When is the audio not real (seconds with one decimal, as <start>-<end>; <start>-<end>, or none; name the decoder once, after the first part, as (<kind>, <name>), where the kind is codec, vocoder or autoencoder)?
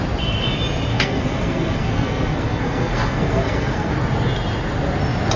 0.9-3.9 (codec, SNAC)